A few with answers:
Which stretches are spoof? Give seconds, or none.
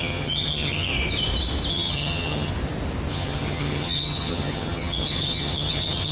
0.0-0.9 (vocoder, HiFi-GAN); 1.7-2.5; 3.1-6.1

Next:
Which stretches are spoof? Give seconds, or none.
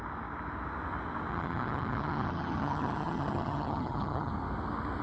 1.3-4.3 (vocoder, HiFi-GAN)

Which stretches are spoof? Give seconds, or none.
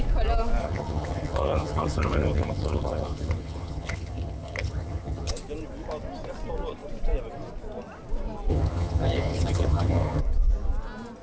0.6-5.3 (vocoder, HiFi-GAN); 8.5-10.2